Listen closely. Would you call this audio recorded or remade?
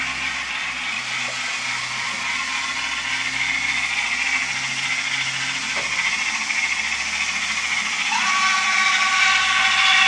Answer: recorded